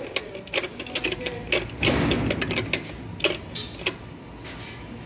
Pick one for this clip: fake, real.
real